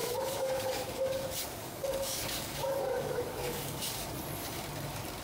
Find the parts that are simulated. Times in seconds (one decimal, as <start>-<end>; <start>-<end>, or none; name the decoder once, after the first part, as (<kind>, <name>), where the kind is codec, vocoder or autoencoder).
0.0-1.2 (codec, DAC); 1.6-4.1